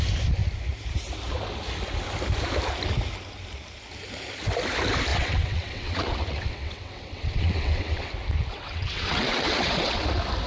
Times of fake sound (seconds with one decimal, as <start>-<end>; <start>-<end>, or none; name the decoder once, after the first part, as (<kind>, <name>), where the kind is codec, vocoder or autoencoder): 5.1-8.1 (vocoder, WaveNeXt); 8.5-10.0